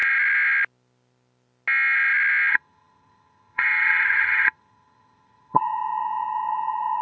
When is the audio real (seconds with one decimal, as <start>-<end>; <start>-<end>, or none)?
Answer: 0.0-2.5